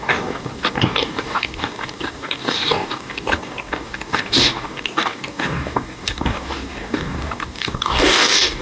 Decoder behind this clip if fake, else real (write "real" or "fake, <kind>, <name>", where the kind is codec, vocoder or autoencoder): fake, codec, DAC